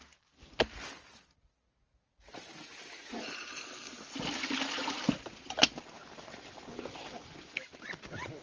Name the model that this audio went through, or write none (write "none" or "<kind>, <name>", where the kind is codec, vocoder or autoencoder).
none